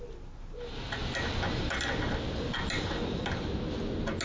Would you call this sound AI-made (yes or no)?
no